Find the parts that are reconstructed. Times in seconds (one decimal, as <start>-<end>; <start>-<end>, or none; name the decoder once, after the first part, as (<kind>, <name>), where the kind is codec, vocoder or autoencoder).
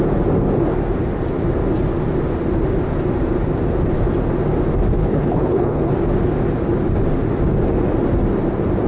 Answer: 5.0-5.9 (codec, HILCodec)